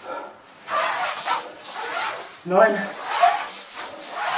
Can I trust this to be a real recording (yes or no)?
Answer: yes